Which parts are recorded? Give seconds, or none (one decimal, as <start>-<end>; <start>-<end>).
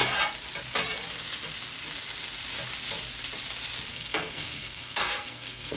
0.0-3.9